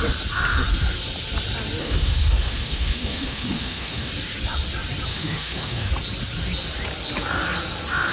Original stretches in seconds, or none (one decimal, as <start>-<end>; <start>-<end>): 0.0-1.8; 4.1-5.1; 5.9-8.1